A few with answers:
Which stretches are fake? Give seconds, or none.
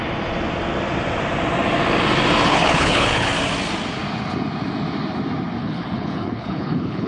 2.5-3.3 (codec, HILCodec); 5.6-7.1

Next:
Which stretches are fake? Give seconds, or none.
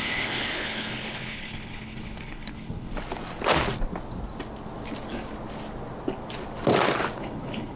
0.0-2.9 (codec, HILCodec); 7.2-7.8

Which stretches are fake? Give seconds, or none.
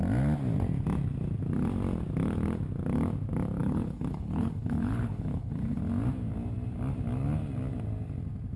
3.6-5.8 (codec, HILCodec)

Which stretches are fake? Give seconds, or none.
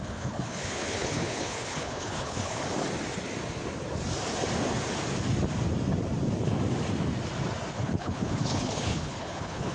0.0-2.6 (codec, HILCodec); 7.7-9.7